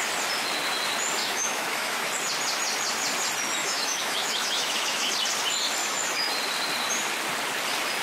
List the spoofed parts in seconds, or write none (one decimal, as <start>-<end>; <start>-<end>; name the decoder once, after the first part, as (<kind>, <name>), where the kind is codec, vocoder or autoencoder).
1.2-2.1 (autoencoder, DAC-VAE); 3.6-5.1; 5.8-6.3